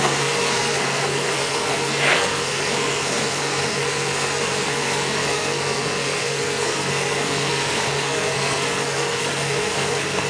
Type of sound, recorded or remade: remade